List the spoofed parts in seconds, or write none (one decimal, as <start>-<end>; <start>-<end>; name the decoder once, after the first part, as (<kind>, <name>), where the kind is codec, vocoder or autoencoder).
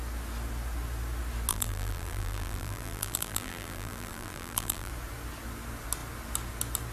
1.5-4.9 (vocoder, BigVGAN v2)